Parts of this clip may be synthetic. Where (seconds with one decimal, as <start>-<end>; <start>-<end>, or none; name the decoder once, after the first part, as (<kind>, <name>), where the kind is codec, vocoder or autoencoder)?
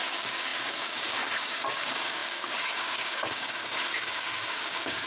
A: 0.0-5.1 (codec, DAC)